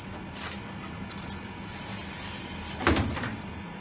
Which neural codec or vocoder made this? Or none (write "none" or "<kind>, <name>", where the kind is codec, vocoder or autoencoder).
none